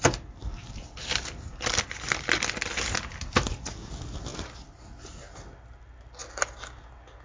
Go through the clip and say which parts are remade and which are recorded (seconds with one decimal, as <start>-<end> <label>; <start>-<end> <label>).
0.0-0.4 recorded; 0.4-1.8 remade; 1.8-7.2 recorded